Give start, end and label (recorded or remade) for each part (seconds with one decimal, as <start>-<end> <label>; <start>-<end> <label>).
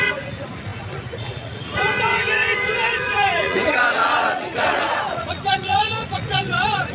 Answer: 0.0-6.9 remade